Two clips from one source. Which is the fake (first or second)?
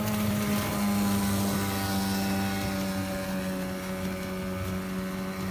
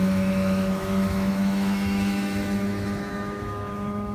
second